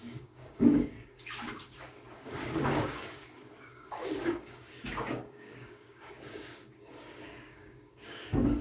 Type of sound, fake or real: fake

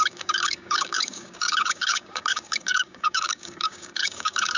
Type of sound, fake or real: fake